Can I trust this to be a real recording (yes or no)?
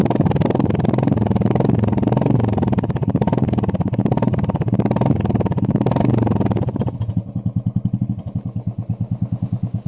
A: yes